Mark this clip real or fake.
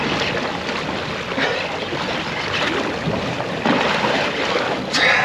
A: real